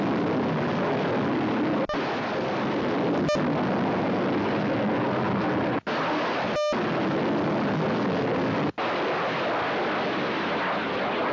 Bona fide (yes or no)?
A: yes